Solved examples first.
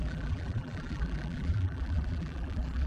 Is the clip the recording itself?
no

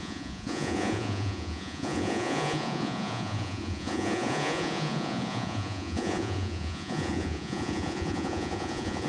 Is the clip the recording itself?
no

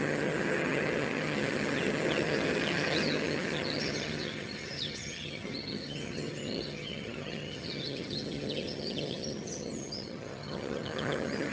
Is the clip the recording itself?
no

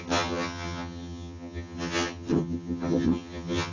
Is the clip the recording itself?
no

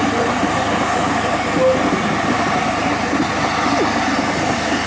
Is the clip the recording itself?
yes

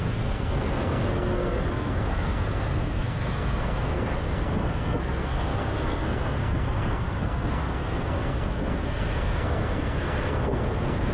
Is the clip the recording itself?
no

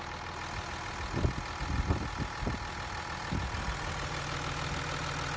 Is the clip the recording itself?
yes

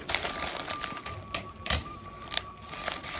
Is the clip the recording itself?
yes